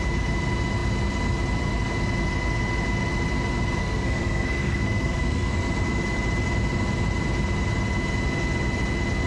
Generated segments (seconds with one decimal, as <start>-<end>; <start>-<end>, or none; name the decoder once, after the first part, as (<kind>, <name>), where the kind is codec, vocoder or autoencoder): 3.8-5.5 (codec, SNAC)